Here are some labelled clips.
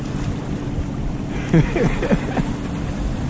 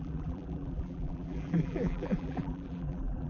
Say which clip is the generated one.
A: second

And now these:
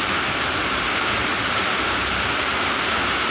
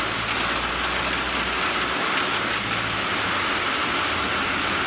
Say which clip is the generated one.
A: first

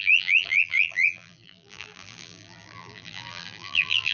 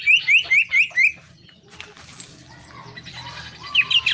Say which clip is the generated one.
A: first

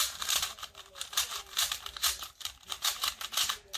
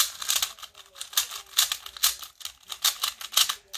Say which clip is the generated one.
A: first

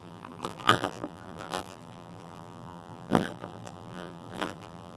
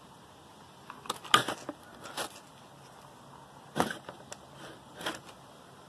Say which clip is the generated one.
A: first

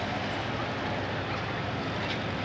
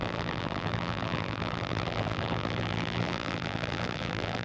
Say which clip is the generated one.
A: second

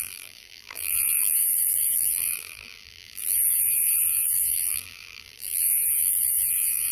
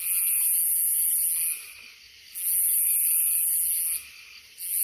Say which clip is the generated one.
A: first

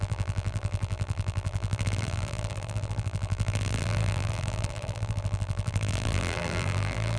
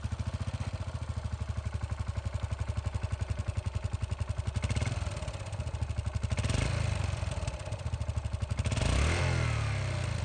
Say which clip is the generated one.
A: first